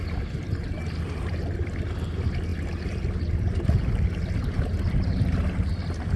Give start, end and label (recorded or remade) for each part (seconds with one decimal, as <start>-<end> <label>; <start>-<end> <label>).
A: 0.0-6.2 recorded